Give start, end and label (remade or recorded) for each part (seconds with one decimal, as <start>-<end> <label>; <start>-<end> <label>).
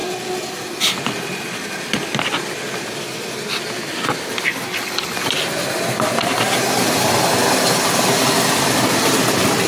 0.0-9.7 recorded